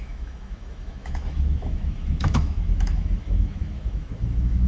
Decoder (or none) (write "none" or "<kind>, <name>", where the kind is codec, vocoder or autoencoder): autoencoder, DAC-VAE